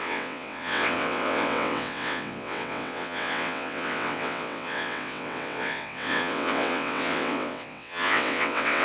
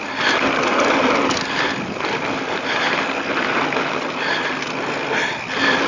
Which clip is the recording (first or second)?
second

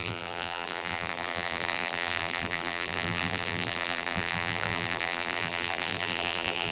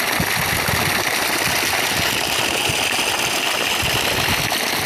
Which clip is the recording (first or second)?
second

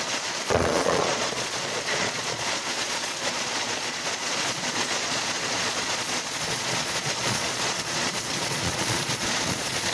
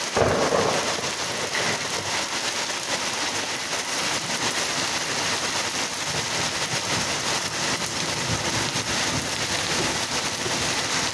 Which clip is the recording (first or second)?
second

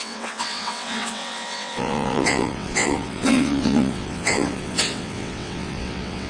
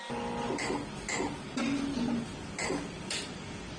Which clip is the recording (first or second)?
second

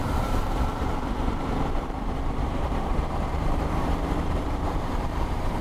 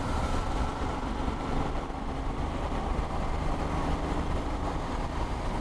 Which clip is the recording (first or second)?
second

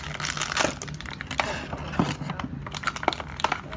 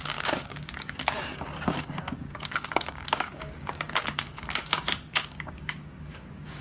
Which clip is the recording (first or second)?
first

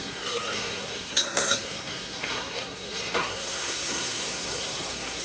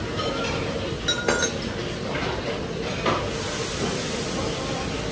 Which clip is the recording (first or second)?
second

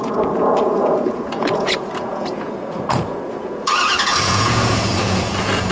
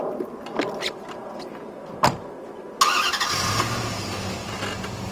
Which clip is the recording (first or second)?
second